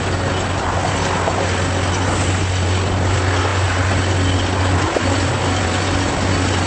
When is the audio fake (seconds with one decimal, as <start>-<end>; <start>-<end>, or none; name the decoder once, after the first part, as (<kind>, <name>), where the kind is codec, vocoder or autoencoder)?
none